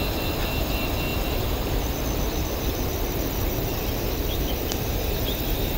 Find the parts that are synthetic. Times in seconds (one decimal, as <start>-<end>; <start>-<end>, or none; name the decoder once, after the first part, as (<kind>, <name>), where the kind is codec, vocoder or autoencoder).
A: 1.1-4.6 (vocoder, BigVGAN v2)